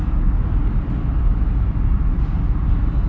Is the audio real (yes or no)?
yes